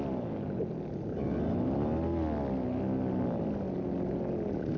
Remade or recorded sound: recorded